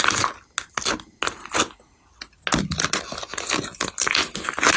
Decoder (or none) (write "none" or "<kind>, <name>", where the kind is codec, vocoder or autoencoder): none